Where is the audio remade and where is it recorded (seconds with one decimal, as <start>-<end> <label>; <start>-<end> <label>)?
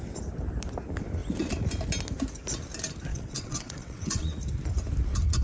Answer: 0.0-3.1 recorded; 3.1-4.3 remade; 4.3-5.4 recorded